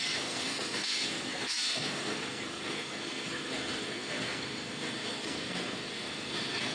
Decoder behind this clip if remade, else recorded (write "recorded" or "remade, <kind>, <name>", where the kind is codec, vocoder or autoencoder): remade, codec, SNAC